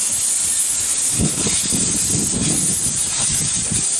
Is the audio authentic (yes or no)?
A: yes